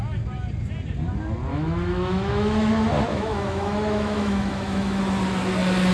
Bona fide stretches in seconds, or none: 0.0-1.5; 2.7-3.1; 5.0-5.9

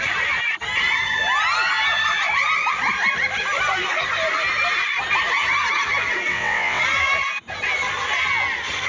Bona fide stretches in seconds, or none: 0.0-6.3; 6.8-8.9

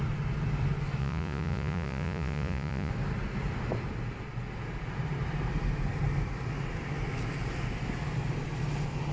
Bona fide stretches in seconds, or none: 0.0-1.0; 2.9-9.1

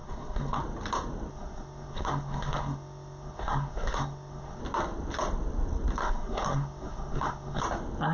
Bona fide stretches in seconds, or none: 0.6-1.3; 4.6-6.0; 7.6-8.1